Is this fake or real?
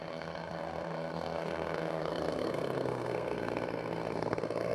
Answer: fake